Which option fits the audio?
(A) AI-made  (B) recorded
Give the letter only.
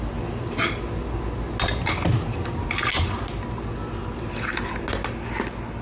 B